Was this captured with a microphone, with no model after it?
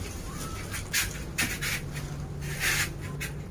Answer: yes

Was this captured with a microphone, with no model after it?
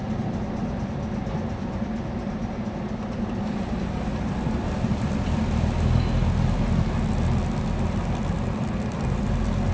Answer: yes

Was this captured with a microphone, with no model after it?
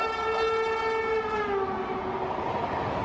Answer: yes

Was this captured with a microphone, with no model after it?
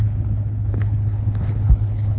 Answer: no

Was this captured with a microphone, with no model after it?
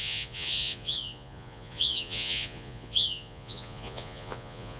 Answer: no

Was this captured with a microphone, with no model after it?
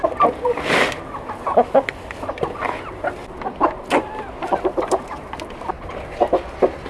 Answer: yes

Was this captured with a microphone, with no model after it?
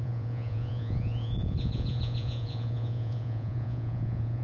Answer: no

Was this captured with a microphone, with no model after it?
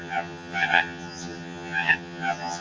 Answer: no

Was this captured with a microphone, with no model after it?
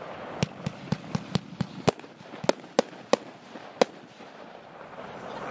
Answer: yes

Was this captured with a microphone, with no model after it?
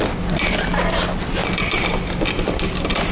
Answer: yes